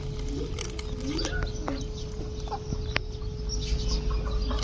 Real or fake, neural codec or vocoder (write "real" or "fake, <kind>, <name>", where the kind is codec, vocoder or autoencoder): real